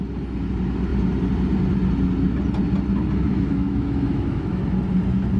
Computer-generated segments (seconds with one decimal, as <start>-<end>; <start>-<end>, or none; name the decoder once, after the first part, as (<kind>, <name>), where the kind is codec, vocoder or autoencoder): 3.3-4.6 (autoencoder, DAC-VAE)